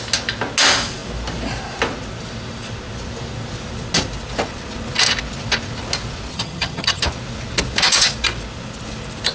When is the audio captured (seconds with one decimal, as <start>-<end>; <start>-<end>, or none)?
0.0-6.3; 7.0-9.3